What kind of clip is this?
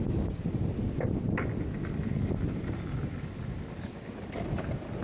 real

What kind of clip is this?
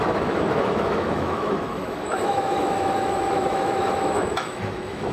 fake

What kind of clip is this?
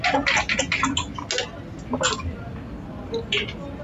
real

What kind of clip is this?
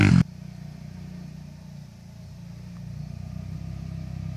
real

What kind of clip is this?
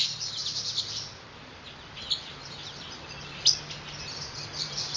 real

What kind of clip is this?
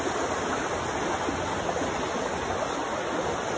real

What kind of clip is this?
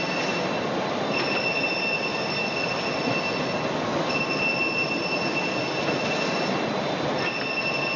real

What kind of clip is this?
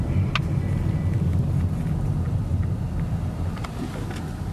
real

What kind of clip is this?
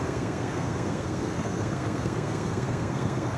fake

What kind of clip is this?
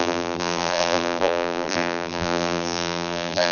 fake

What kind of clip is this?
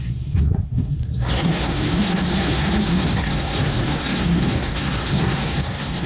fake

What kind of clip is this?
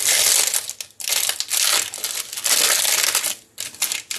real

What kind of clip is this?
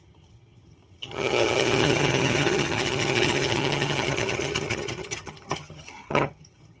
fake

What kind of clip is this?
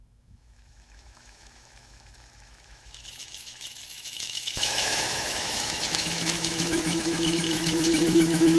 fake